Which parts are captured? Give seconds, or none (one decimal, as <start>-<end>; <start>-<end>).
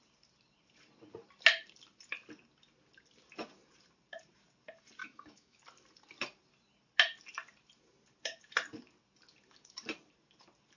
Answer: 0.0-5.0; 5.6-10.8